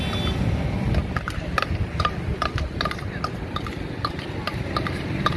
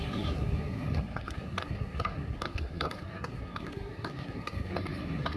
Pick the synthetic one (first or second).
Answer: second